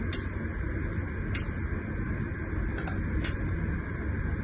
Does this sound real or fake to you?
real